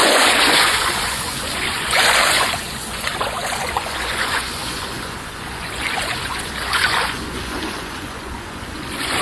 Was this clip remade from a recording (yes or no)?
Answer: yes